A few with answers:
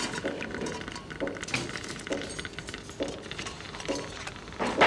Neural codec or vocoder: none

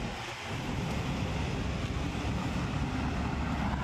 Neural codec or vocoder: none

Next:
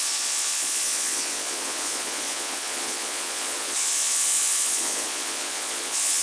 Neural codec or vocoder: vocoder, Vocos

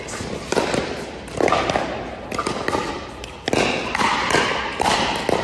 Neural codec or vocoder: none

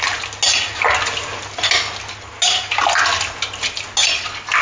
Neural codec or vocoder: none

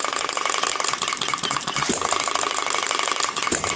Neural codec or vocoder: vocoder, BigVGAN v2